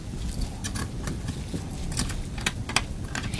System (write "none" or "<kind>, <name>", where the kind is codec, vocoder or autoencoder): none